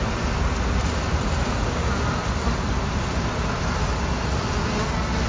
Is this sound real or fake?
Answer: real